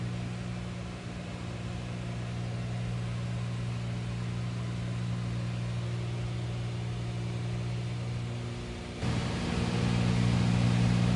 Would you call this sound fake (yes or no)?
no